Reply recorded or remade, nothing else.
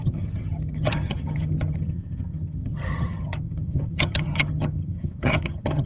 remade